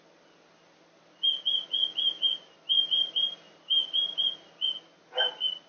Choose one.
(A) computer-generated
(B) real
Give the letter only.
B